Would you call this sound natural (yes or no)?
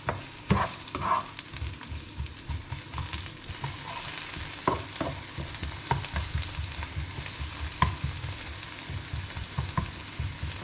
yes